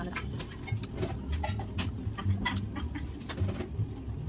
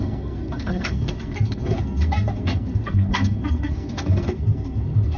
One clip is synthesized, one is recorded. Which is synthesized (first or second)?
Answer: second